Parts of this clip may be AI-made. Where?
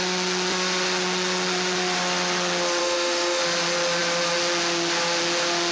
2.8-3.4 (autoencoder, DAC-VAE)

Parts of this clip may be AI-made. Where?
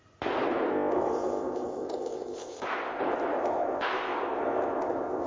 0.7-3.0 (codec, ZipCodec); 3.4-5.3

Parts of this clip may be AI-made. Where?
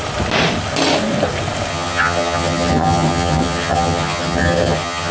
1.7-5.1 (vocoder, HiFi-GAN)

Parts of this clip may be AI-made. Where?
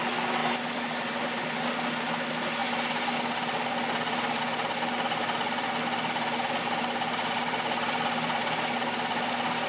none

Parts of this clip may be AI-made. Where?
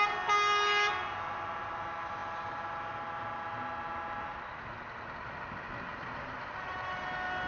none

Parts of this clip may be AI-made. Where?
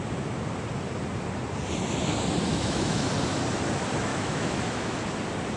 2.5-3.1 (autoencoder, DAC-VAE); 4.1-5.0